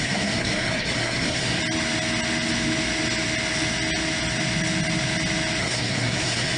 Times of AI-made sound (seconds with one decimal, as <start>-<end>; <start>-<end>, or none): 0.0-1.6; 5.6-6.6